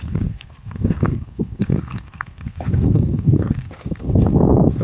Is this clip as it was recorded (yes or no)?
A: no